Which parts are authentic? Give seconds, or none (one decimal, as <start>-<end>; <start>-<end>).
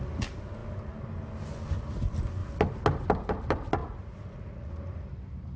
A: 0.0-3.8; 4.7-5.6